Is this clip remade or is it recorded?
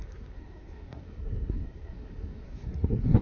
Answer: remade